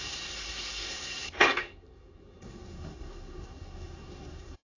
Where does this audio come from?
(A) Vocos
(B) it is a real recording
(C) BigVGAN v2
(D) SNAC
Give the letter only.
D